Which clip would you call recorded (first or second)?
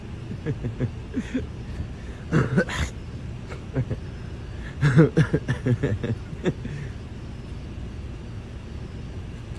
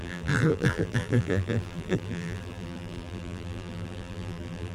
first